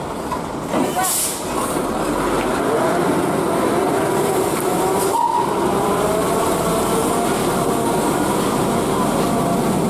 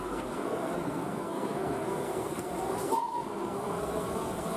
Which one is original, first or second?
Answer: first